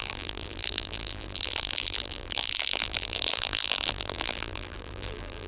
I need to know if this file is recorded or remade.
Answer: remade